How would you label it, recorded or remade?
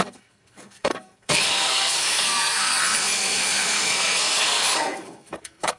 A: remade